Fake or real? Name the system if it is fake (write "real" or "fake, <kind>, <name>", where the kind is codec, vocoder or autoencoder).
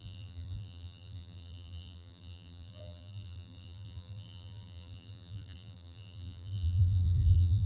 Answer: fake, vocoder, BigVGAN v2